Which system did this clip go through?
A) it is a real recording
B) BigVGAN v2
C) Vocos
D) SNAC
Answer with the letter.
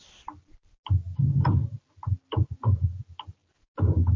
A